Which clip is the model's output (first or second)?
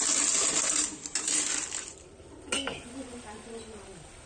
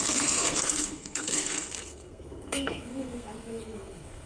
second